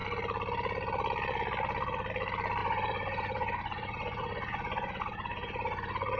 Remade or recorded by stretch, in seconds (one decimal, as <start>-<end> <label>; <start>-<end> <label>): 0.0-2.6 recorded; 2.6-6.2 remade